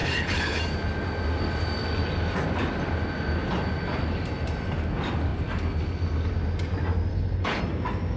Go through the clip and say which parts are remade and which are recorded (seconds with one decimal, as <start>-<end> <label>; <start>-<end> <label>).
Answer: 0.0-0.6 remade; 0.6-7.1 recorded; 7.1-7.6 remade; 7.6-8.2 recorded

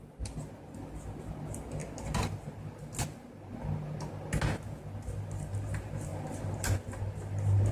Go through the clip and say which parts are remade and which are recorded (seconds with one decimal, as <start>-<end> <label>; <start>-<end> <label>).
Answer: 0.0-7.7 recorded

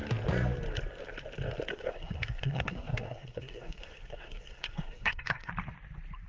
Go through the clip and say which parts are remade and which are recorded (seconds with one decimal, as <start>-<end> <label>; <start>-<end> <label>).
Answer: 0.0-1.7 recorded; 1.7-5.5 remade; 5.5-6.3 recorded

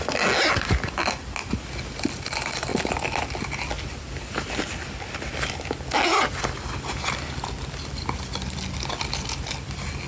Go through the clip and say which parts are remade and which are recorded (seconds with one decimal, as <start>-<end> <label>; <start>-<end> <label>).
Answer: 0.0-10.1 recorded

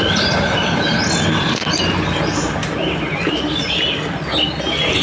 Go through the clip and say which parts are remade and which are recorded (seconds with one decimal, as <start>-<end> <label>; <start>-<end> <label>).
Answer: 0.0-5.0 recorded

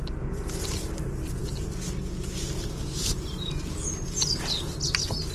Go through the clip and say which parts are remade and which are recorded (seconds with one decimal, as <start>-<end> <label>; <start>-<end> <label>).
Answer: 0.0-5.3 recorded

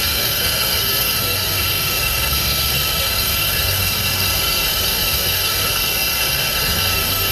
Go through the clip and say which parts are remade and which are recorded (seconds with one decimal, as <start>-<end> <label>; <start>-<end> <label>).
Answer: 0.0-7.3 remade